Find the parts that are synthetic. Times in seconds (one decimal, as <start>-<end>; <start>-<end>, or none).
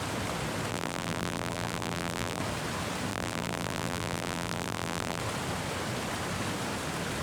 0.7-2.4; 3.1-5.2